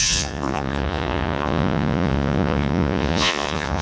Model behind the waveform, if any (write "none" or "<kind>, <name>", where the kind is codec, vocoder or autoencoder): vocoder, Vocos